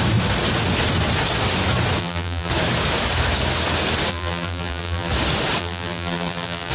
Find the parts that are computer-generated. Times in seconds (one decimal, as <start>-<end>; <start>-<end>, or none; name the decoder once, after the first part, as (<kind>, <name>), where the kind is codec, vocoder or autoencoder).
2.0-2.5 (vocoder, BigVGAN v2); 4.1-5.1; 5.6-6.7